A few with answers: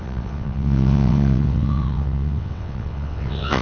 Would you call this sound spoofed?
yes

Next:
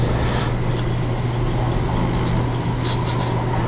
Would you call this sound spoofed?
no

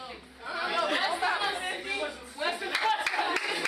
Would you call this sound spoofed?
no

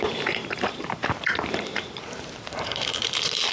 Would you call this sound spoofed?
yes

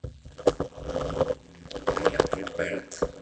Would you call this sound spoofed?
yes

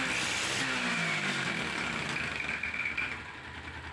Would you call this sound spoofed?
no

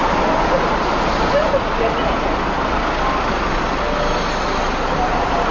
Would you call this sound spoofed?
no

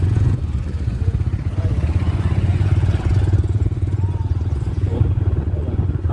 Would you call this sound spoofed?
yes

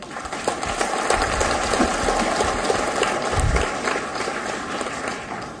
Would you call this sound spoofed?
no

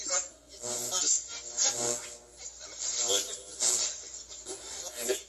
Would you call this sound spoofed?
no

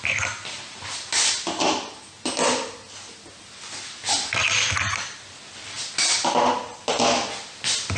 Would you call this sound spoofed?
no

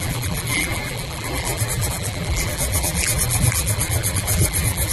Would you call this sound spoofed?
yes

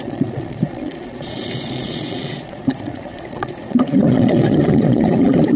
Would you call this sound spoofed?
yes